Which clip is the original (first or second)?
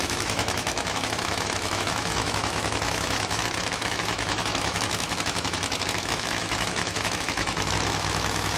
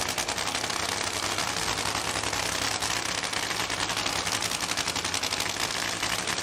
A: second